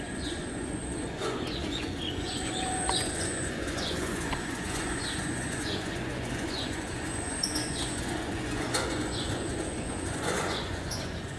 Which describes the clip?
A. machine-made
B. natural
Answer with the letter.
A